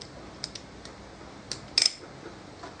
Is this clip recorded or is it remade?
recorded